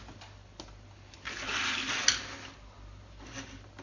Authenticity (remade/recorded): recorded